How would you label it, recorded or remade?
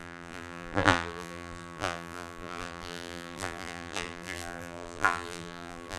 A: remade